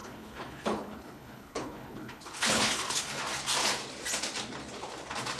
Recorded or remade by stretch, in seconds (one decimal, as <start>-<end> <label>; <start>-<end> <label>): 0.0-3.2 remade; 3.2-5.4 recorded